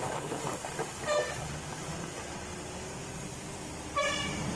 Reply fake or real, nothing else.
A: fake